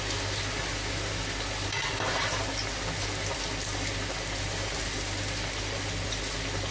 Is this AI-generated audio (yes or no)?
no